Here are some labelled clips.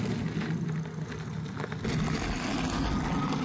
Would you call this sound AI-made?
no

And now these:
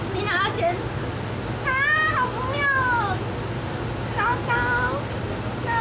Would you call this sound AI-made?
no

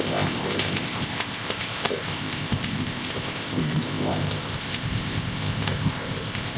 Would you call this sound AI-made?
yes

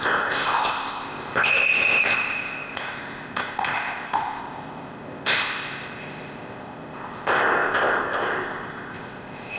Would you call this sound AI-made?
yes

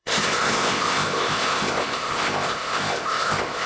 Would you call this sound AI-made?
yes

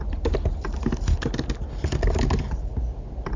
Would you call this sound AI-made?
no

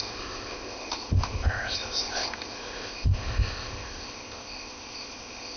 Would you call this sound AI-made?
yes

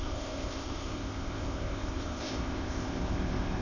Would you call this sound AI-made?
yes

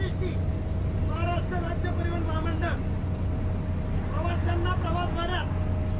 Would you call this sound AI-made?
no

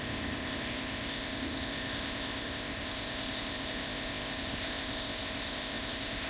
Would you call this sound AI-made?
yes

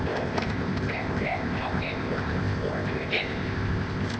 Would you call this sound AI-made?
yes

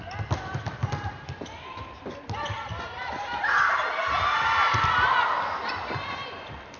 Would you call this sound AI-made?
no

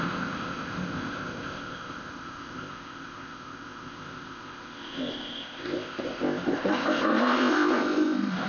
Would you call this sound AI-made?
yes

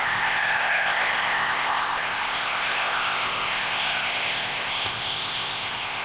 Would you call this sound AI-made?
yes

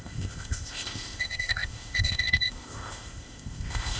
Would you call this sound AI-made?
yes